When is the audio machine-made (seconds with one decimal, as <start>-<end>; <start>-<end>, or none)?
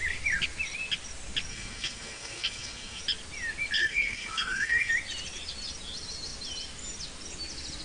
1.5-3.0; 3.8-4.9